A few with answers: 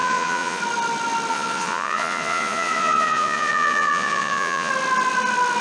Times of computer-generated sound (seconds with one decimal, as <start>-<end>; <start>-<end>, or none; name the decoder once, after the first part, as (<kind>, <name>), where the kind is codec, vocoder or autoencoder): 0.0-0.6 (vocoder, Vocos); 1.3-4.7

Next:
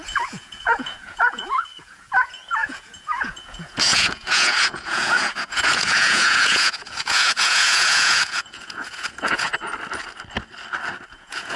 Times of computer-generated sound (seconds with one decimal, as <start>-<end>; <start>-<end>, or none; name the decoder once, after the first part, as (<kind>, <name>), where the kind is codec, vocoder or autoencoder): 0.0-9.5 (vocoder, Vocos); 11.1-11.6

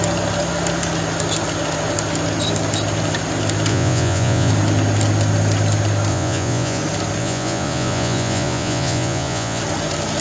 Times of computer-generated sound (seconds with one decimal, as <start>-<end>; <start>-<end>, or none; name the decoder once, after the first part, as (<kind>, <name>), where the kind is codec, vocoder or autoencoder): 3.7-4.5 (vocoder, Vocos); 6.1-6.8; 7.2-9.6

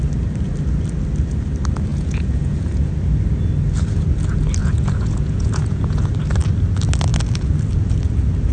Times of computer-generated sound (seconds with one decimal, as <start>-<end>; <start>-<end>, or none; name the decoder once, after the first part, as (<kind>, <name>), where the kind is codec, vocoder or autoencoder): 1.9-2.9 (vocoder, Vocos); 4.6-6.1

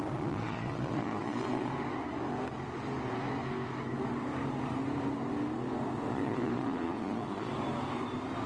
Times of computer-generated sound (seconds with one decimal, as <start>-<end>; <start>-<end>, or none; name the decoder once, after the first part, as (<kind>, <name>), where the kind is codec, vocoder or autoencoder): 0.0-1.7 (vocoder, Vocos); 6.1-7.5